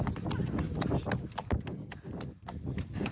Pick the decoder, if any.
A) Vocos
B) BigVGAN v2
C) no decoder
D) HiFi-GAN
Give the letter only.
C